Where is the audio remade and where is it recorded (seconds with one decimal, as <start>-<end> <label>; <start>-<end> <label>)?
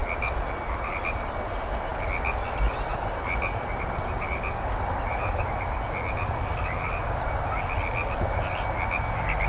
0.0-9.5 recorded